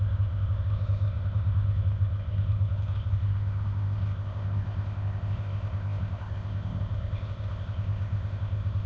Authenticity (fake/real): fake